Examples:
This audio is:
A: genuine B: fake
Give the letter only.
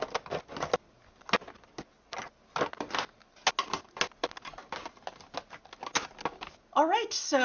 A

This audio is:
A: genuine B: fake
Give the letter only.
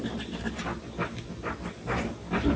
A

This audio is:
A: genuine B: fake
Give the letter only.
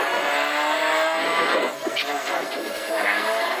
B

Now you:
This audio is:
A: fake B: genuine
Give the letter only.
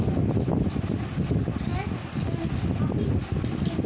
B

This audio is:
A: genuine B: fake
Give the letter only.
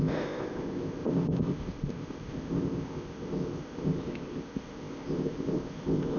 B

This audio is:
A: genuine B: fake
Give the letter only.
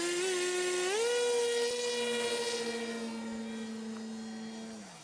A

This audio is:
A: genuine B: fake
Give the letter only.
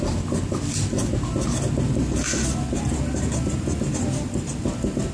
A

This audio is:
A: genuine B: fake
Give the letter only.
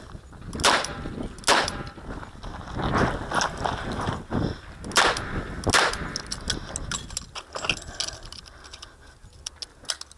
A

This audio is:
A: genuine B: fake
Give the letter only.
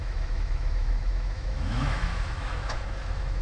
B